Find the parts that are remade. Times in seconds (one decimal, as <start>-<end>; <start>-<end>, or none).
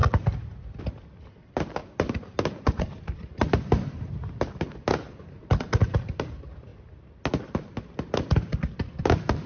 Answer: 0.8-1.8; 2.8-6.7; 7.8-9.5